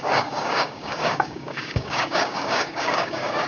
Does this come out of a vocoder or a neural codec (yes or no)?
yes